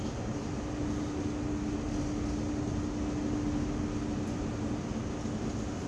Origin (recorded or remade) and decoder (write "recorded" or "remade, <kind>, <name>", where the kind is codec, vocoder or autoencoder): recorded